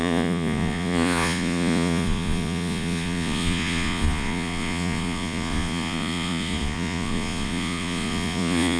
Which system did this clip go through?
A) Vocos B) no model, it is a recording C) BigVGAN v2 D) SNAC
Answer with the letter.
A